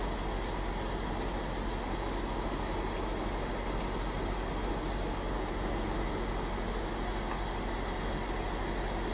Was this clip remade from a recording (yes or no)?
no